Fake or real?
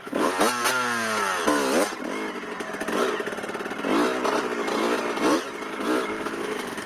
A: real